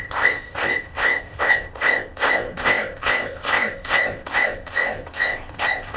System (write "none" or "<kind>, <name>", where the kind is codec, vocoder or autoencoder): codec, ZipCodec